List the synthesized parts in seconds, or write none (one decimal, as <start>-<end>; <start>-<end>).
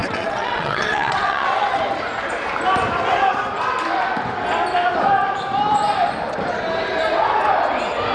0.0-1.8